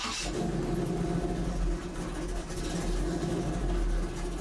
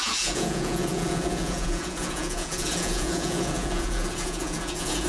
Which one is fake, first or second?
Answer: second